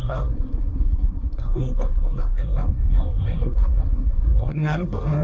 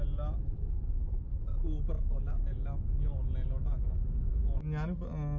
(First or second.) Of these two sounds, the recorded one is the second